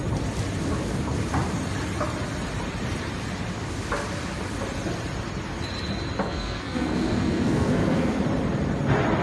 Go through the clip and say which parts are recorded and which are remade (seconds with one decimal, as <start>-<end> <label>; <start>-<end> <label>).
0.0-6.2 recorded; 6.2-8.2 remade; 8.2-9.2 recorded